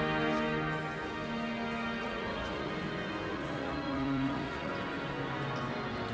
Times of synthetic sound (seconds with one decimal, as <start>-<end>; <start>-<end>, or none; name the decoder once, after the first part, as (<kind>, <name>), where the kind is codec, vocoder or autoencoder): 2.0-2.7 (vocoder, Vocos); 3.3-4.7